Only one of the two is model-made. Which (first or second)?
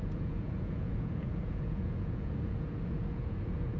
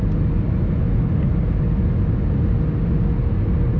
first